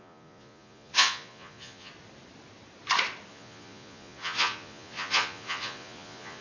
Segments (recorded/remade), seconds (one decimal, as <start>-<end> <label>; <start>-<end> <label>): 0.0-1.9 remade; 1.9-3.3 recorded; 3.3-6.4 remade